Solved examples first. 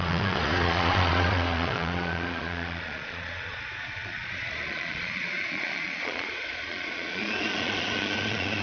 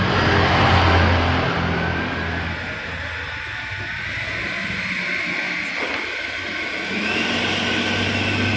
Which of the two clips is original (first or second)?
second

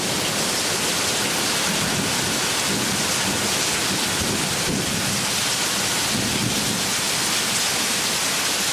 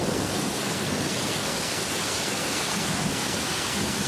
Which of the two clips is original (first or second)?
first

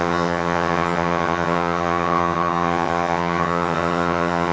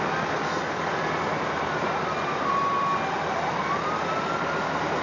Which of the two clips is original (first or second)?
second